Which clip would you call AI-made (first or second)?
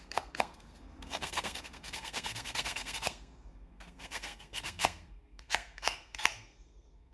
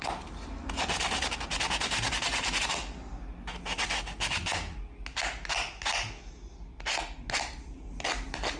first